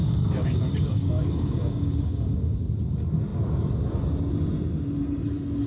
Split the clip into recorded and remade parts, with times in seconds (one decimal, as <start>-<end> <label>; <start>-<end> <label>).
0.0-2.7 remade; 2.7-5.7 recorded